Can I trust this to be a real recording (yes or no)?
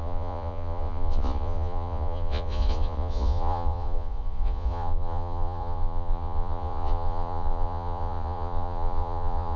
no